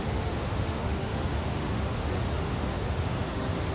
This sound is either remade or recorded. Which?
remade